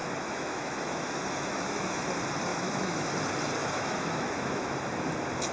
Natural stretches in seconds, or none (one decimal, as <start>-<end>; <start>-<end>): 2.0-2.5; 3.1-3.6; 4.7-5.5